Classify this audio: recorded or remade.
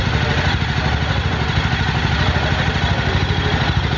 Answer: recorded